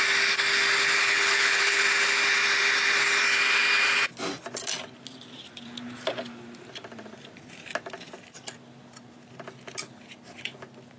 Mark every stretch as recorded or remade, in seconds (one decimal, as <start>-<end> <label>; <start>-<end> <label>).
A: 0.0-1.0 recorded; 1.0-1.8 remade; 1.8-11.0 recorded